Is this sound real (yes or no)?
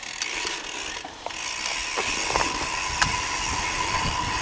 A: yes